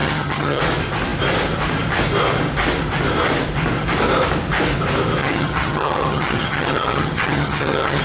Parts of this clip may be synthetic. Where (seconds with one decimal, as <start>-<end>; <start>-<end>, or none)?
0.0-0.6; 5.2-8.0